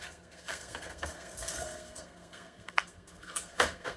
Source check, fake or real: fake